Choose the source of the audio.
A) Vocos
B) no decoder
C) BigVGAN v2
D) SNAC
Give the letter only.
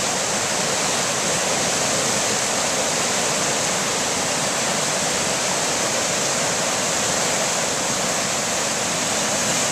B